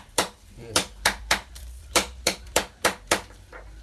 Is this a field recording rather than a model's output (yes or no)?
no